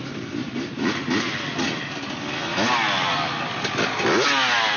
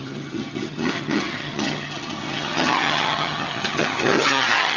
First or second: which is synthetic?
second